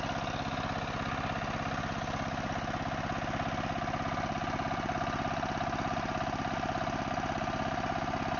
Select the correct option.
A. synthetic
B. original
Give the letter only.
B